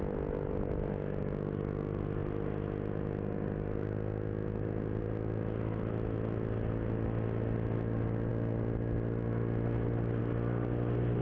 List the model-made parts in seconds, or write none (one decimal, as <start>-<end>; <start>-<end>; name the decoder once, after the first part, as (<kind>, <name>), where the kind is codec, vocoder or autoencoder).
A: none